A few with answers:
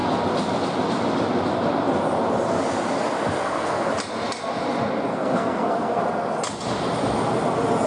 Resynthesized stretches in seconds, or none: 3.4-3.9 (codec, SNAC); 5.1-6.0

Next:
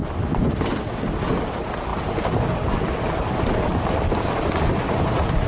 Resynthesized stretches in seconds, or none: 1.9-5.5 (vocoder, BigVGAN v2)

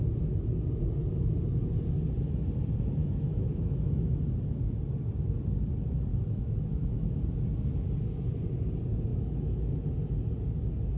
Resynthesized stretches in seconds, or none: 3.0-4.2 (autoencoder, DAC-VAE); 6.1-7.2; 9.1-9.7

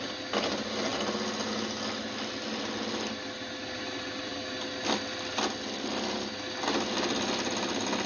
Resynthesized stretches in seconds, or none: none

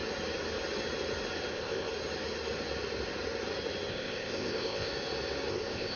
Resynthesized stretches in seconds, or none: 1.5-1.9 (codec, ZipCodec); 3.9-4.9; 5.5-6.0

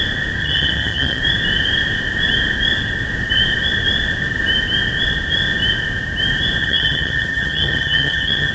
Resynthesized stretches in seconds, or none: 0.4-1.2 (vocoder, HiFi-GAN); 6.6-8.5

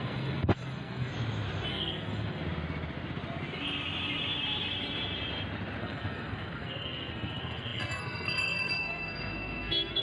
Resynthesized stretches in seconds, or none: 0.0-1.1 (codec, SNAC); 1.7-2.4; 5.8-10.0

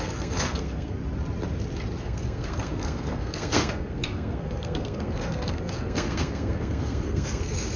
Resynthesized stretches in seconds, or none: 0.0-1.0 (codec, SNAC); 2.0-7.8